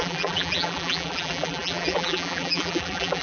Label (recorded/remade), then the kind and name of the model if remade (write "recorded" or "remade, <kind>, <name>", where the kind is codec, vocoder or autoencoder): remade, vocoder, BigVGAN v2